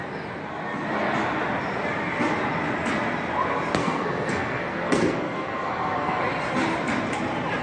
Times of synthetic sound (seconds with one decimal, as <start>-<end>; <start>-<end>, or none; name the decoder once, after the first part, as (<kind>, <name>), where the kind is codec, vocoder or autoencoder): 3.8-6.2 (codec, SNAC)